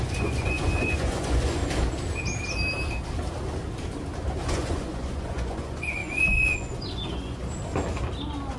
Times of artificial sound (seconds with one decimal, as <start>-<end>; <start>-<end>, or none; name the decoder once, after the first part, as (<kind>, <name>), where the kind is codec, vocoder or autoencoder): 0.0-1.6 (vocoder, Vocos); 4.4-7.4